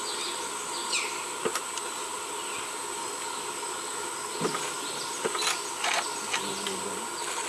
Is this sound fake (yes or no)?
no